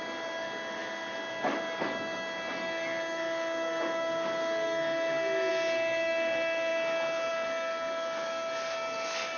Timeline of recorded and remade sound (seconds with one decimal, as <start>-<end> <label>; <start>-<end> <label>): 0.0-9.4 remade